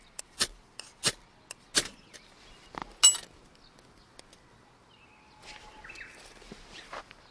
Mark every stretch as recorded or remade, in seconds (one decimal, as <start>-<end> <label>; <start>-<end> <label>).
0.0-7.3 recorded

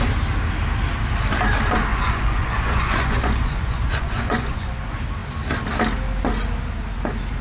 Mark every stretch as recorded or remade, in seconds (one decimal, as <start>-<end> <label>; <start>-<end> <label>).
0.0-1.9 recorded; 1.9-4.8 remade; 4.8-7.4 recorded

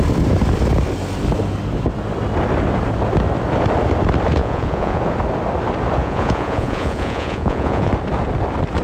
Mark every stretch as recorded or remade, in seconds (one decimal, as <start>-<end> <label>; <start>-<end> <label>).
0.0-4.4 recorded; 4.4-5.0 remade; 5.0-6.0 recorded; 6.0-7.9 remade; 7.9-8.8 recorded

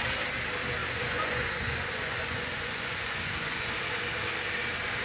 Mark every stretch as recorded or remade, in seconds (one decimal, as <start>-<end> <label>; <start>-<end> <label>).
0.0-0.8 recorded; 0.8-3.8 remade; 3.8-5.0 recorded

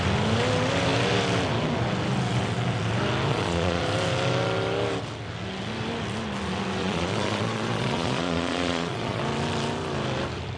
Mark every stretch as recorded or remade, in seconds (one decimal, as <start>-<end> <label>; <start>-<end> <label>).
0.0-3.3 recorded; 3.3-3.8 remade; 3.8-6.8 recorded; 6.8-9.2 remade; 9.2-10.6 recorded

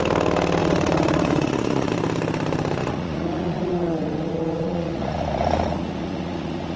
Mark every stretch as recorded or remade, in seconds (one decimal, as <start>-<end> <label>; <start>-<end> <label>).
0.0-0.6 recorded; 0.6-1.9 remade; 1.9-2.8 recorded; 2.8-6.8 remade

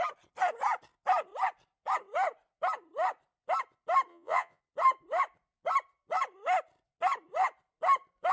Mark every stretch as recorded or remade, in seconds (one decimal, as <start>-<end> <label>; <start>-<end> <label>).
0.0-4.1 recorded; 4.1-4.6 remade; 4.6-8.3 recorded